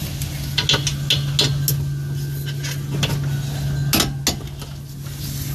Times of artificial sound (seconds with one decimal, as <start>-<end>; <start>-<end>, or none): none